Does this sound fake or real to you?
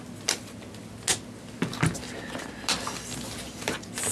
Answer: real